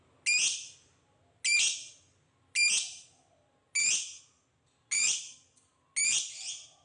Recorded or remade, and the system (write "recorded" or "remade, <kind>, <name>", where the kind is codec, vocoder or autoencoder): recorded